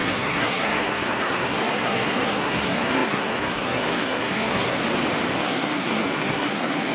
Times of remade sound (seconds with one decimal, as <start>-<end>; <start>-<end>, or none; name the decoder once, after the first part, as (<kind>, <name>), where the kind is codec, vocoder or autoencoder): 0.0-4.8 (codec, SNAC); 5.4-6.9